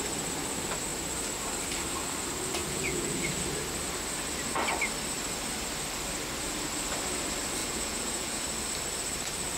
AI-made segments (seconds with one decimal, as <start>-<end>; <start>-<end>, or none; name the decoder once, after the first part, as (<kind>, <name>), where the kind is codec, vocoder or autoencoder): 2.6-3.2 (vocoder, Vocos); 7.6-8.4